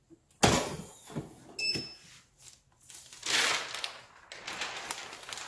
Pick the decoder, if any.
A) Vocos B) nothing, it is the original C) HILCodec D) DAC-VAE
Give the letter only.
B